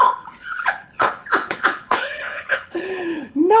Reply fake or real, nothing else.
fake